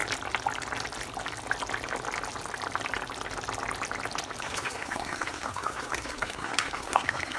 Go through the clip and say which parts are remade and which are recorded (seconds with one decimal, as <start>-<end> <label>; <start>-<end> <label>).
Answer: 0.0-4.4 recorded; 4.4-7.4 remade